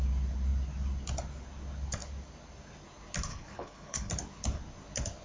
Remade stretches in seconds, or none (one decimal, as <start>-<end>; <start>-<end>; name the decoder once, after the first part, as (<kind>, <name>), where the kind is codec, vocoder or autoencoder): 3.3-4.1 (codec, HILCodec)